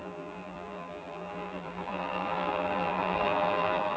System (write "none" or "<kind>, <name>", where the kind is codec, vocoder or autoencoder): vocoder, BigVGAN v2